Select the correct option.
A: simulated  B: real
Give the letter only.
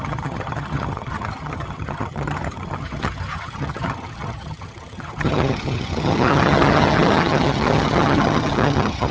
A